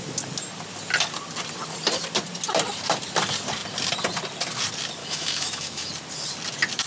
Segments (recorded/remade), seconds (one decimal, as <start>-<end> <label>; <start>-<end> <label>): 0.0-5.0 recorded; 5.0-5.9 remade; 5.9-6.9 recorded